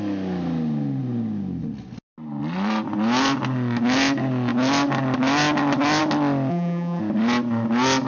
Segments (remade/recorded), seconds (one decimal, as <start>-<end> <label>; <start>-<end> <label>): 0.0-6.5 recorded; 6.5-7.0 remade; 7.0-8.1 recorded